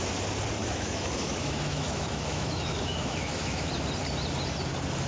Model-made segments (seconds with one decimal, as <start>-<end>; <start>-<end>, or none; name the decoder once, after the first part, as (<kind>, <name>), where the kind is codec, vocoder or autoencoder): 0.6-3.7 (autoencoder, DAC-VAE)